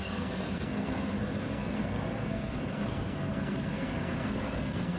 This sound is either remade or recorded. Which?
remade